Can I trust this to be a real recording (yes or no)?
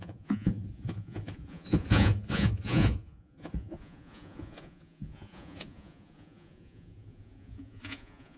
no